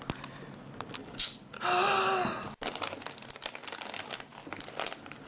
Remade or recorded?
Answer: recorded